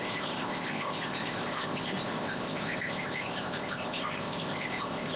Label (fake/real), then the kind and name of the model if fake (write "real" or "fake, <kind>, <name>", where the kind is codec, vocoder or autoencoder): fake, codec, ZipCodec